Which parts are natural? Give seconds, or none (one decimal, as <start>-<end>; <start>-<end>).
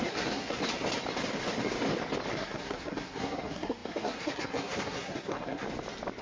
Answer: 0.6-2.3; 5.6-6.2